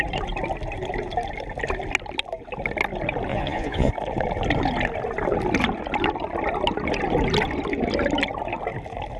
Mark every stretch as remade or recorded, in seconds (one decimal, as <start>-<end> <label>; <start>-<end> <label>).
0.0-3.3 recorded; 3.3-3.9 remade; 3.9-9.2 recorded